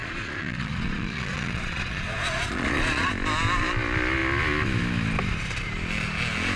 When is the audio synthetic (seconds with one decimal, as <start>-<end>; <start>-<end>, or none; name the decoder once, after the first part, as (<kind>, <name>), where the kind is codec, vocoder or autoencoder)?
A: 0.0-3.1 (vocoder, Vocos)